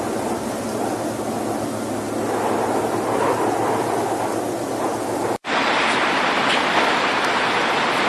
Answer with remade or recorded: recorded